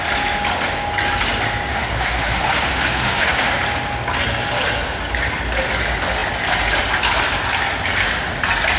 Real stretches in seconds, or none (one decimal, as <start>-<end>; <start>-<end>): 0.0-1.7; 3.4-8.8